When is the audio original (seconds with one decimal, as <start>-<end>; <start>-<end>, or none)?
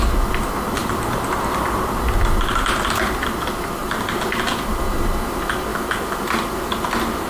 0.0-0.8; 2.0-7.3